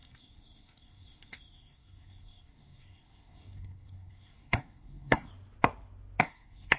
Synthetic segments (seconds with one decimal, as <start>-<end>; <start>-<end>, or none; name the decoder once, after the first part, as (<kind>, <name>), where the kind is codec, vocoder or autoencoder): 0.0-5.3 (codec, SNAC); 6.2-6.8